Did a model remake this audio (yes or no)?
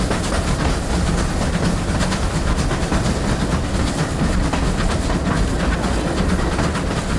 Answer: no